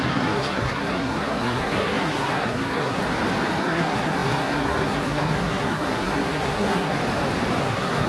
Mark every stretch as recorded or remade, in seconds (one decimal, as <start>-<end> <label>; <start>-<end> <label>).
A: 0.0-3.0 remade; 3.0-3.6 recorded; 3.6-7.0 remade; 7.0-7.6 recorded; 7.6-8.1 remade